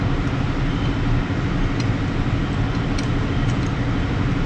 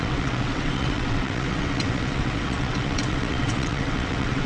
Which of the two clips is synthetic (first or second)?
second